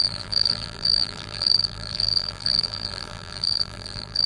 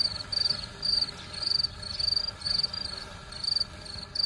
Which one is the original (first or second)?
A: second